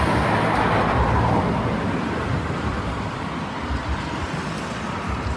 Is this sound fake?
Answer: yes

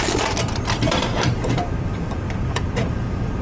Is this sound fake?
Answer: yes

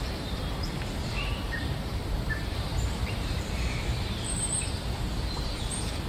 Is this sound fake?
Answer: yes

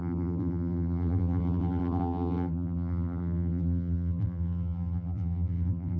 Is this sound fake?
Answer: yes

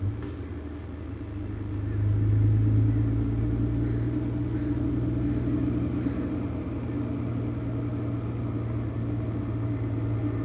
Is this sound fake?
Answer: no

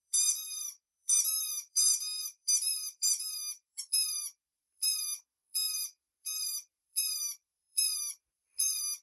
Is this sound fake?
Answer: yes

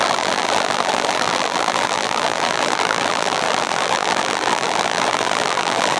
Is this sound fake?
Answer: yes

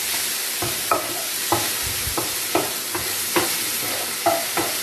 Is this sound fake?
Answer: yes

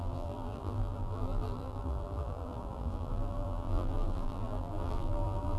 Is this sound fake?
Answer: yes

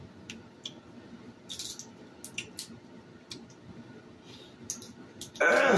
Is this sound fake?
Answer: no